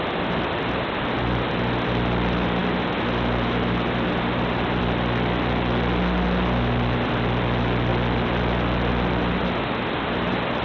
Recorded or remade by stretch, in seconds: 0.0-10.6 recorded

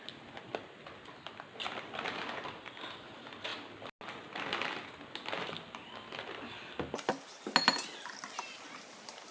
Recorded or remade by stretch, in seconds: 0.0-9.3 recorded

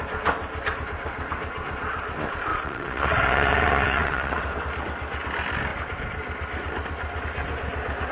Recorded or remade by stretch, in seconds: 0.0-2.5 recorded; 2.5-4.4 remade; 4.4-8.1 recorded

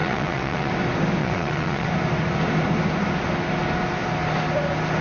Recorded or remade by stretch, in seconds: 0.0-0.7 remade; 0.7-1.2 recorded; 1.2-1.9 remade; 1.9-5.0 recorded

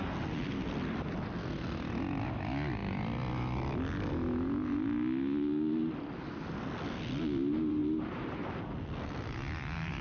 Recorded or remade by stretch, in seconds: 0.0-10.0 recorded

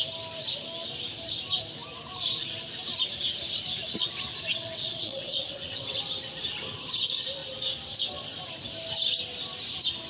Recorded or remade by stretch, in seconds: 0.0-4.5 recorded; 4.5-6.0 remade; 6.0-10.1 recorded